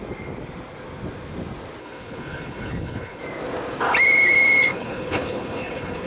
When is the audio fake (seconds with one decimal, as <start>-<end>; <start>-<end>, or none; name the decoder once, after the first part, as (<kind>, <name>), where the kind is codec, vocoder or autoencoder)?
1.8-3.2 (codec, HILCodec); 4.7-6.1